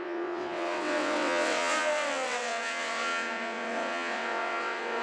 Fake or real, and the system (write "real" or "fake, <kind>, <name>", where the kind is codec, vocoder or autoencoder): fake, vocoder, WaveNeXt